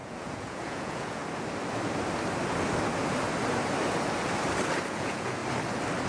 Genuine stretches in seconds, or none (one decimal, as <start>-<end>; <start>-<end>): 1.2-4.9; 5.4-6.1